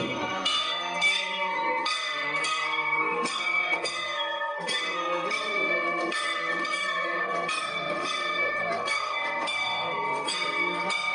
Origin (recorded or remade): remade